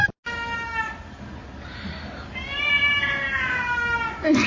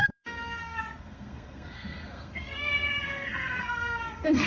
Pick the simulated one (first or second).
second